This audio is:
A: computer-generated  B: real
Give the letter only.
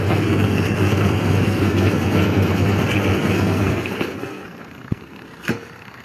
A